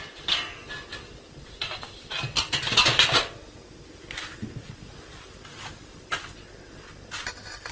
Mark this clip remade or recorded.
recorded